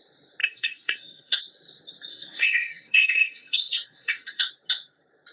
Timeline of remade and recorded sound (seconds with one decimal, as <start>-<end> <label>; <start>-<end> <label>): 0.0-0.4 recorded; 0.4-1.4 remade; 1.4-2.1 recorded; 2.1-4.5 remade; 4.5-5.3 recorded